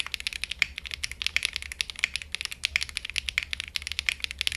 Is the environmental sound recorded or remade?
recorded